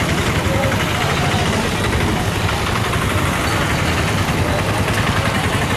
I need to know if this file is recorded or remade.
remade